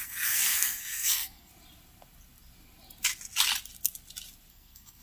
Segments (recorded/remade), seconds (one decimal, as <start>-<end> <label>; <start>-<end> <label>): 0.0-1.5 remade; 1.5-4.5 recorded; 4.5-5.0 remade